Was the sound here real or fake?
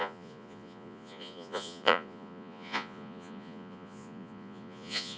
fake